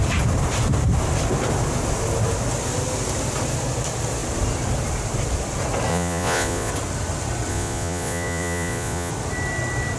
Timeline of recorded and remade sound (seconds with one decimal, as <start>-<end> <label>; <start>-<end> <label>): 0.0-5.9 recorded; 5.9-6.7 remade; 6.7-7.5 recorded; 7.5-9.1 remade; 9.1-10.0 recorded